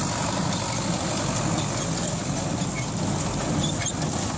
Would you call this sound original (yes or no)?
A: yes